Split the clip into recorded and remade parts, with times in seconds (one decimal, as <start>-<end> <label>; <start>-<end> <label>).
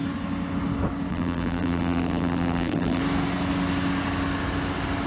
0.0-1.1 recorded; 1.1-3.0 remade; 3.0-5.1 recorded